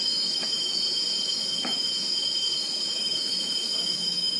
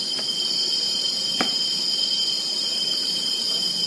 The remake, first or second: first